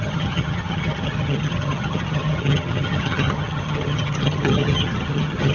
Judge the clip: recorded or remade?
remade